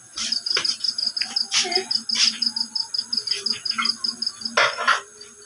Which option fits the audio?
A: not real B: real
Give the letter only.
B